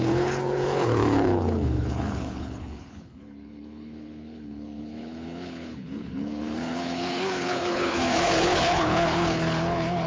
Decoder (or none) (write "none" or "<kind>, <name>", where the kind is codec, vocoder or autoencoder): codec, HILCodec